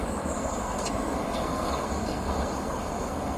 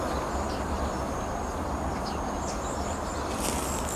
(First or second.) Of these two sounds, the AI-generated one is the first